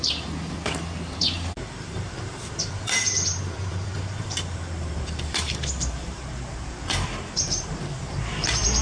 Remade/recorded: remade